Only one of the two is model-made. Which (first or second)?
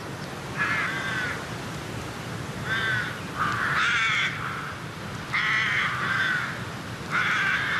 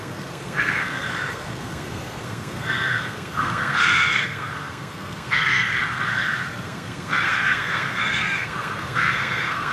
second